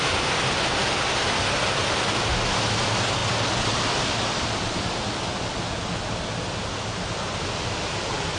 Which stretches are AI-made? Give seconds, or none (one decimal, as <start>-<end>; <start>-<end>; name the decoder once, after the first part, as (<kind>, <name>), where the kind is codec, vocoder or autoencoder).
none